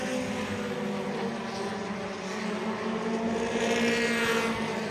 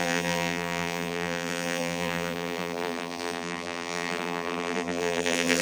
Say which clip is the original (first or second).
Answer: first